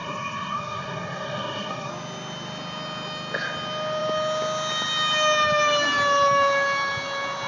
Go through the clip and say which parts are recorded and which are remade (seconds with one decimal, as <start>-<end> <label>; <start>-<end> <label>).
0.0-1.9 remade; 1.9-7.5 recorded